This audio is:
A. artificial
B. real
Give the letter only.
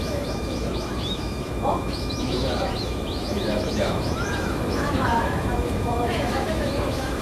A